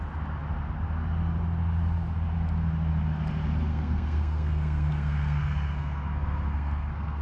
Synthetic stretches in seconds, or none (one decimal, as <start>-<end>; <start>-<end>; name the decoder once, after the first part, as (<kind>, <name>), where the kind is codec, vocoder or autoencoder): 3.7-7.2 (codec, SNAC)